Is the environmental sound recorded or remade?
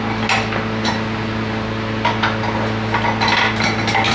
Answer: recorded